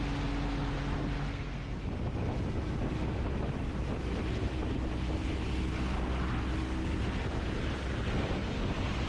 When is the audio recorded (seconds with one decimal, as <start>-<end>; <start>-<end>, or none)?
0.0-1.3; 1.8-9.1